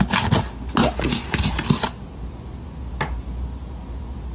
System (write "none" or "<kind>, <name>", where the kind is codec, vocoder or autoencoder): none